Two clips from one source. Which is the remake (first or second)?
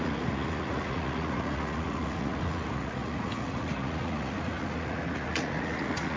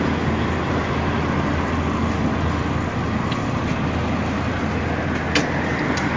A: first